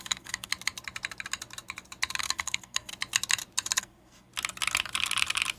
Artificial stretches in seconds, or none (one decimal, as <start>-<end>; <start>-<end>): 0.0-0.5; 2.2-2.9; 3.8-4.3